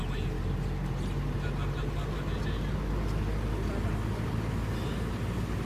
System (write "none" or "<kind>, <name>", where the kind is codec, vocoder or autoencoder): none